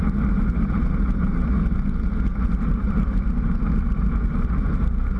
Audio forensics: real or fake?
real